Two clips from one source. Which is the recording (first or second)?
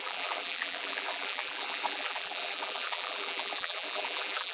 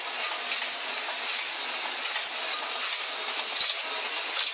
second